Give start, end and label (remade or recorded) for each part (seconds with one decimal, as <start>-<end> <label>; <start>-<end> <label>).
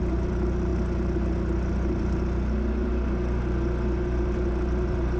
0.0-5.2 recorded